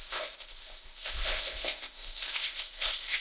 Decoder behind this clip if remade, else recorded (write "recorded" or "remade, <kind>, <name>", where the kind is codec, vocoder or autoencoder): remade, codec, ZipCodec